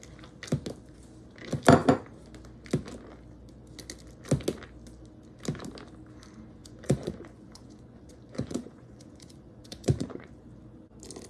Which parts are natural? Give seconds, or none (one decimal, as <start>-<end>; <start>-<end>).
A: 0.0-6.6; 10.4-11.3